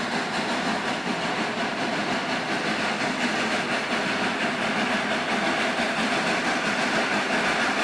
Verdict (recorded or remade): recorded